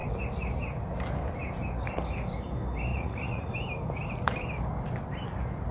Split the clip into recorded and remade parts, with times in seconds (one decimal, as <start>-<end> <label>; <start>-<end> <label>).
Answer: 0.0-2.9 recorded; 2.9-3.5 remade; 3.5-5.7 recorded